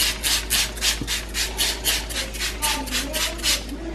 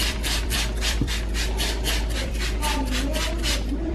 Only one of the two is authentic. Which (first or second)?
first